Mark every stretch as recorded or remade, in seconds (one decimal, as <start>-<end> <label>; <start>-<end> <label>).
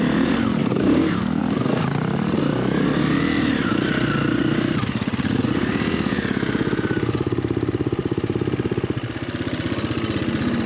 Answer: 0.0-0.6 recorded; 0.6-1.4 remade; 1.4-10.7 recorded